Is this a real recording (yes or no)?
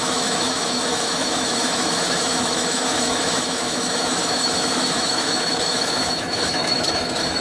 no